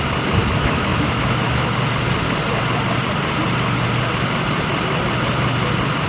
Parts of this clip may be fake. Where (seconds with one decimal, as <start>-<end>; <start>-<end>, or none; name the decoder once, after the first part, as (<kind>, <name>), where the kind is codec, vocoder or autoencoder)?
0.4-1.7 (autoencoder, DAC-VAE)